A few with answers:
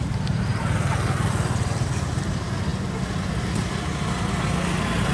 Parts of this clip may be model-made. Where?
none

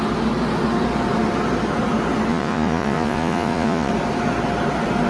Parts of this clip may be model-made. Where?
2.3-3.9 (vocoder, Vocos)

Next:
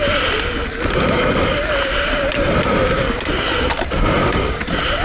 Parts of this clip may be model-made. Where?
0.0-0.6 (vocoder, BigVGAN v2); 3.6-5.0

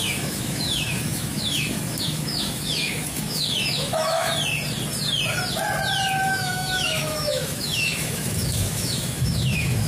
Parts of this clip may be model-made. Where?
0.0-4.3 (autoencoder, DAC-VAE); 6.3-9.9

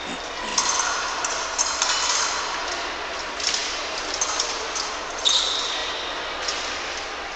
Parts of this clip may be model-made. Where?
none

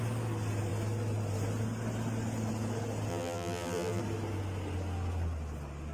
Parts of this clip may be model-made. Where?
3.1-4.0 (vocoder, BigVGAN v2)

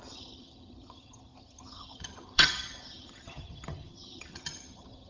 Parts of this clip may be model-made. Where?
0.0-5.1 (vocoder, HiFi-GAN)

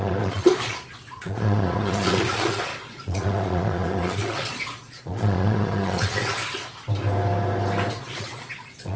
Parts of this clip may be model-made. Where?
0.0-6.4 (vocoder, Vocos); 8.0-9.0